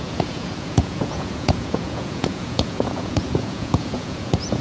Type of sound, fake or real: fake